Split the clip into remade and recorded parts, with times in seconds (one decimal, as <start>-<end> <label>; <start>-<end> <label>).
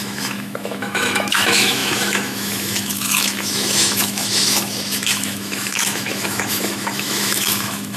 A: 0.0-8.0 remade